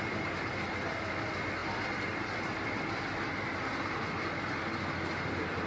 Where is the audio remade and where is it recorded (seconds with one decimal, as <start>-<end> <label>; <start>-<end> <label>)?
0.0-5.7 recorded